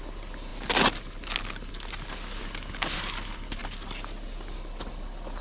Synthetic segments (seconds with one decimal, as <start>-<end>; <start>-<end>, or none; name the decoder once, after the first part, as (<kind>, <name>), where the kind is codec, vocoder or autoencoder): none